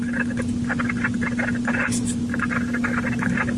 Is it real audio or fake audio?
real